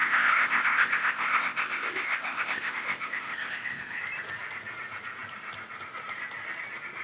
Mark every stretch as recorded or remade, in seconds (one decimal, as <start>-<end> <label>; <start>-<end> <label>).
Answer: 0.0-4.0 remade; 4.0-7.0 recorded